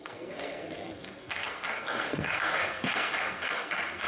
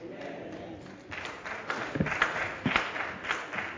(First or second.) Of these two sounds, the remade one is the first